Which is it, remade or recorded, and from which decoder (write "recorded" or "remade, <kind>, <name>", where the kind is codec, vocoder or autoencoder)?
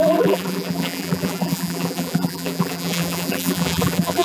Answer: remade, vocoder, BigVGAN v2